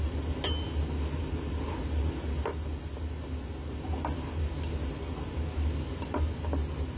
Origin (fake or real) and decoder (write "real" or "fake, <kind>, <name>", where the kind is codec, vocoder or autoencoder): real